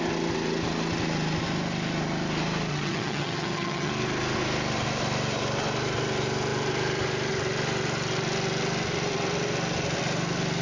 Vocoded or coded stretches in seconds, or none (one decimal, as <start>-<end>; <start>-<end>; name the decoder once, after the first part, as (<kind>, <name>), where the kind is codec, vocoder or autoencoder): 2.7-3.9 (vocoder, HiFi-GAN)